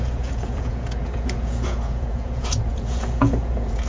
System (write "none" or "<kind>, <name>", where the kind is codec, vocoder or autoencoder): vocoder, Vocos